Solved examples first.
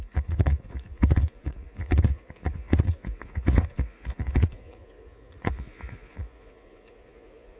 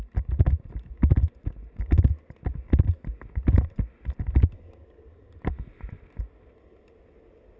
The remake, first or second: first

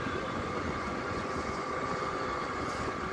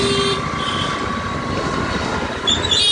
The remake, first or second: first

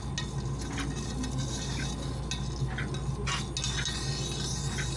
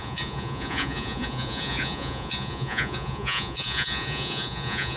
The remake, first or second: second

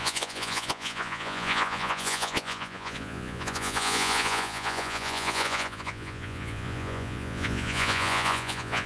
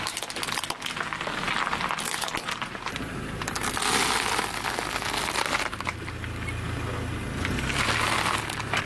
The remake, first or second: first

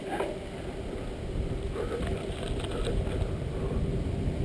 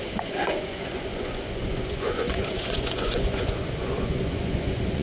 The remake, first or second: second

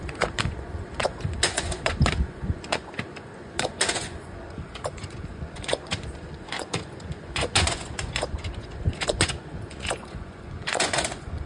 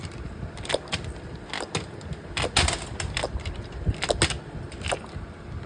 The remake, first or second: first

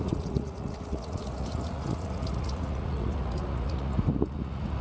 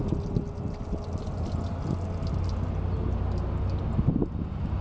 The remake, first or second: first